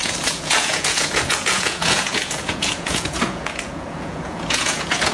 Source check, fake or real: fake